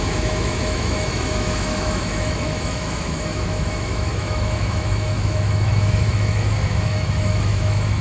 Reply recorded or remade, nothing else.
remade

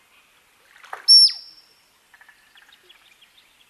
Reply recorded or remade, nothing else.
recorded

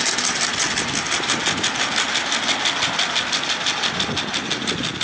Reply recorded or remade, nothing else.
recorded